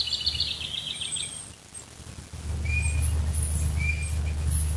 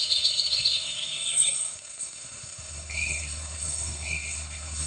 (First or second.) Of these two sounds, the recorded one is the first